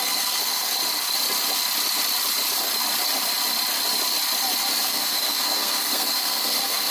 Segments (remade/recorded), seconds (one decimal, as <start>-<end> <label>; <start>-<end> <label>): 0.0-0.7 remade; 0.7-4.8 recorded; 4.8-6.9 remade